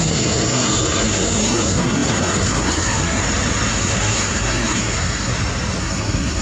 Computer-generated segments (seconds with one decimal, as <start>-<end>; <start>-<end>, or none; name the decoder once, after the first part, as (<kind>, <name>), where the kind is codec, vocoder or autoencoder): 0.0-3.2 (codec, SNAC); 3.7-5.3; 5.8-6.4